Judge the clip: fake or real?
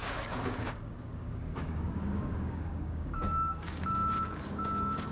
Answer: fake